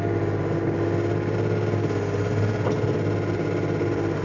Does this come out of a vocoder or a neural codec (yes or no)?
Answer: no